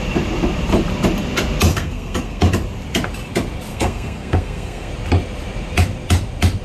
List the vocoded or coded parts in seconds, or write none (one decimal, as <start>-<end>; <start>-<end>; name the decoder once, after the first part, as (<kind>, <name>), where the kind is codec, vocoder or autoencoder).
1.7-2.4 (codec, SNAC); 3.7-4.9